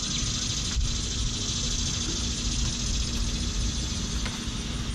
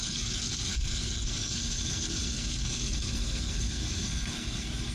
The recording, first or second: first